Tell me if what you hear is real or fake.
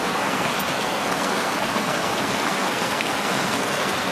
fake